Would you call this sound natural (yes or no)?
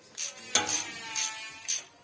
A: yes